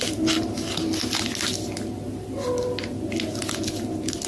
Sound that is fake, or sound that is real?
real